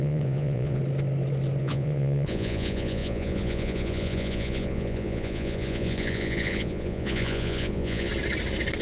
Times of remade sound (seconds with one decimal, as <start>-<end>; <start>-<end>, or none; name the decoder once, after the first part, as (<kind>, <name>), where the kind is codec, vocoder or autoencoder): 0.0-0.8 (vocoder, Vocos); 1.6-8.1